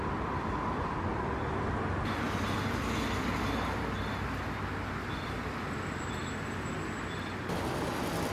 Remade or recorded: recorded